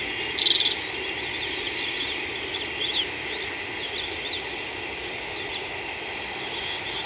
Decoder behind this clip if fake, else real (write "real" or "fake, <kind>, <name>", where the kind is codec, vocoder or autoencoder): real